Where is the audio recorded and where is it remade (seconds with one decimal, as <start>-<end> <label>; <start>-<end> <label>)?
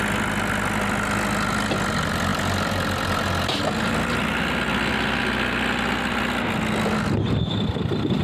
0.0-2.3 recorded; 2.3-3.6 remade; 3.6-8.2 recorded